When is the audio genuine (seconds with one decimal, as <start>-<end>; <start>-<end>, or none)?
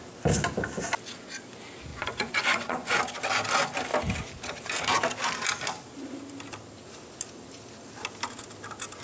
0.0-1.9; 3.0-9.0